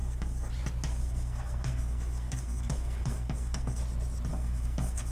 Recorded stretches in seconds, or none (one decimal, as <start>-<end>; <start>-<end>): 0.5-0.9; 3.8-4.3